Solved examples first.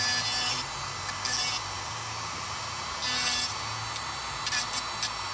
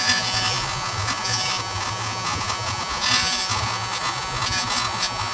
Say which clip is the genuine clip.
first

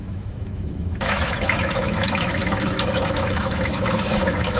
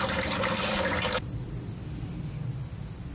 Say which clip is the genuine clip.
second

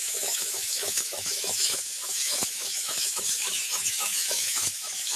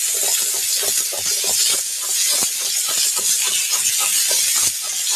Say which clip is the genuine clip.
second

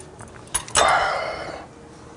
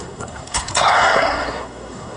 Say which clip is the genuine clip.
first